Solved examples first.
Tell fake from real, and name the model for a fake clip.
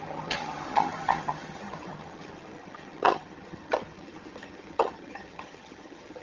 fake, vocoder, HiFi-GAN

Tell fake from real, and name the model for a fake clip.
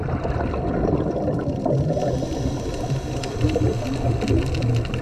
real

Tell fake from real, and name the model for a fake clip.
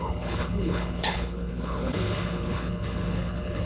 fake, codec, HILCodec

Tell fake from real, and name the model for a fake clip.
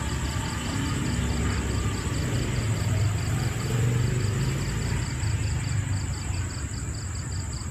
real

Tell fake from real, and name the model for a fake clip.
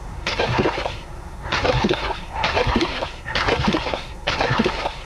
fake, codec, SNAC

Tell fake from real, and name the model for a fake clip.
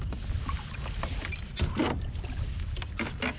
real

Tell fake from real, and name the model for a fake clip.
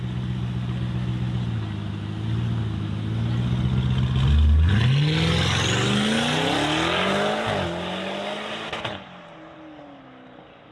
real